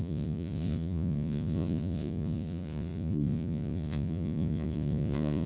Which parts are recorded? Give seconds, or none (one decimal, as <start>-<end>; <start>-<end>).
none